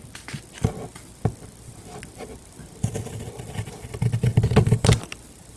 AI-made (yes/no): no